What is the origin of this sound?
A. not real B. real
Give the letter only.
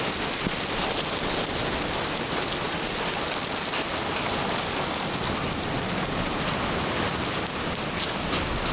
B